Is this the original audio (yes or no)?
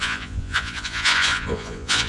no